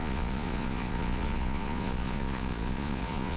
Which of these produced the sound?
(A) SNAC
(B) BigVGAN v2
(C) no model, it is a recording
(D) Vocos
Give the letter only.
D